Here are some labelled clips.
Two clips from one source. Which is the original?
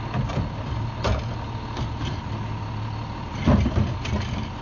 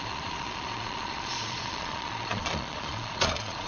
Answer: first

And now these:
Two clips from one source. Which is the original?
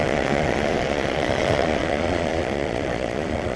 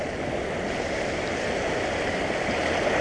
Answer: second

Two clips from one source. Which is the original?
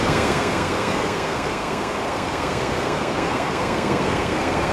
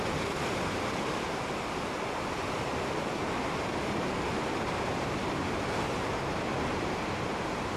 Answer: second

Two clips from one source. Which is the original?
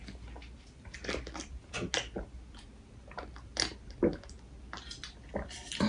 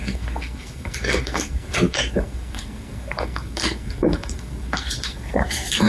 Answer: first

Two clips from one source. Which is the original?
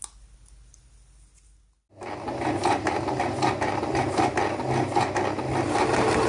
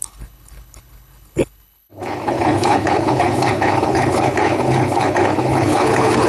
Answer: first